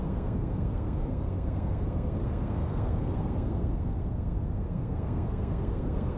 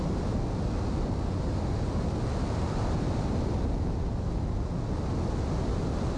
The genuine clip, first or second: second